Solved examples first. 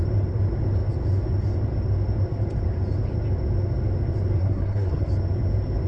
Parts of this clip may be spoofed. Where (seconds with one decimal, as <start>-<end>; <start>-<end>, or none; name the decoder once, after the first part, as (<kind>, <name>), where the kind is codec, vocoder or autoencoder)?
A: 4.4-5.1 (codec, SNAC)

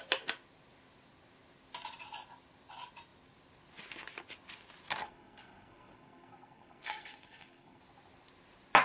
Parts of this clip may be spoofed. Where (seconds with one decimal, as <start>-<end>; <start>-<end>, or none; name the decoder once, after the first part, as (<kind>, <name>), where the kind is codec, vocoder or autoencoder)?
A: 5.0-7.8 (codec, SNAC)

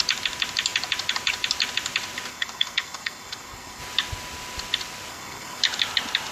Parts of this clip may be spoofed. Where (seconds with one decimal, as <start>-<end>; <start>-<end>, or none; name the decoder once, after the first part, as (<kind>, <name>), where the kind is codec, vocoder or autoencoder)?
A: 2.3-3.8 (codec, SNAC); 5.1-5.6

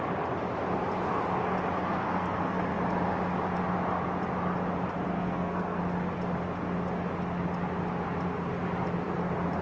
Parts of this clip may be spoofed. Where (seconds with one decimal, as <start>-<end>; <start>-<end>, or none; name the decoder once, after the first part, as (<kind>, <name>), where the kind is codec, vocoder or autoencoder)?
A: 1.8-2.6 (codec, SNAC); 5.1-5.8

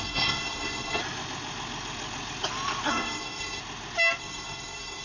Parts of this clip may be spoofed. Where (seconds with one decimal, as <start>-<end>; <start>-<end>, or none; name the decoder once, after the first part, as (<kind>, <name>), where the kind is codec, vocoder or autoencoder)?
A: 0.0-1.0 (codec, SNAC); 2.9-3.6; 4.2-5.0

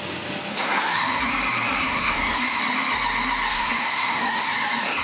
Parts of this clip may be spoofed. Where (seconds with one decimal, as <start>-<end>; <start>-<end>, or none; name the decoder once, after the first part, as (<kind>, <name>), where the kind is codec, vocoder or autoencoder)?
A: 0.5-1.2 (codec, SNAC); 1.8-2.6; 3.5-4.5

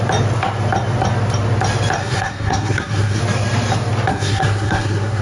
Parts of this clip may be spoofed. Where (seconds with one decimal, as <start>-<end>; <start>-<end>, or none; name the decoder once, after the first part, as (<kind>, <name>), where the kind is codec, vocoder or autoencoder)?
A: 2.0-3.2 (codec, SNAC); 4.1-5.2